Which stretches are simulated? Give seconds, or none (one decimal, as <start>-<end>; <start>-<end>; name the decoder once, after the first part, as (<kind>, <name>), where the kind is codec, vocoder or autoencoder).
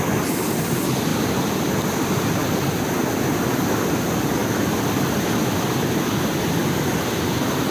4.4-5.2 (vocoder, BigVGAN v2); 6.6-7.7